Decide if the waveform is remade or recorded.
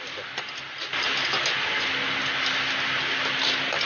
recorded